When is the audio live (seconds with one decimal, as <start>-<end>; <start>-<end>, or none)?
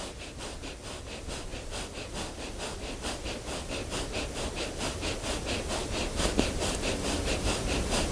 0.0-8.1